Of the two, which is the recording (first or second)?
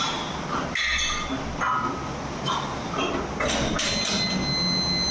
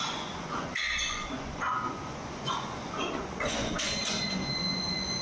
first